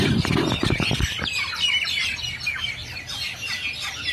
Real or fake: real